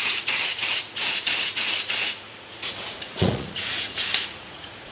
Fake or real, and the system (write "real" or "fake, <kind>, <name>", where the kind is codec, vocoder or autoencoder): fake, vocoder, Vocos